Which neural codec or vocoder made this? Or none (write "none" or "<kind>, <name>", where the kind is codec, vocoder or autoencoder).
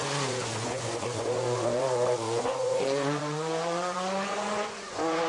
vocoder, Vocos